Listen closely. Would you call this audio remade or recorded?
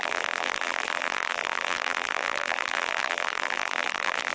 remade